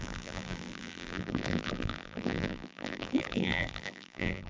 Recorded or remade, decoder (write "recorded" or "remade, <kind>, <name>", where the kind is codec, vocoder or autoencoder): remade, vocoder, BigVGAN v2